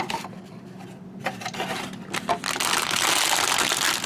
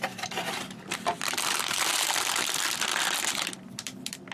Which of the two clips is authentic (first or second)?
first